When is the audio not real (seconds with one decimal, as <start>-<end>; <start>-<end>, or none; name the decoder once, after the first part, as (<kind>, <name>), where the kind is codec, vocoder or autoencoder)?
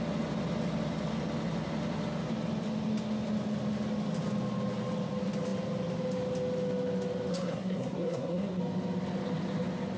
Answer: 7.3-8.6 (codec, SNAC)